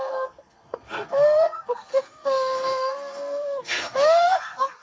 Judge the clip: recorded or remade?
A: remade